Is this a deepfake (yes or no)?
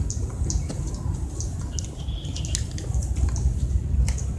no